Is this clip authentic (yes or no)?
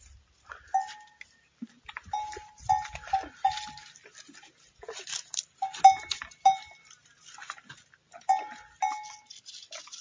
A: yes